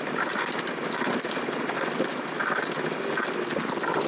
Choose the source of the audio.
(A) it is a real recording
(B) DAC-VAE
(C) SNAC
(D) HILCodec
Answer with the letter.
A